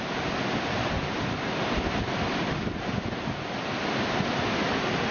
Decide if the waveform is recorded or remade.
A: recorded